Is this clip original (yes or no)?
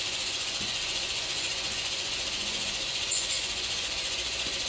no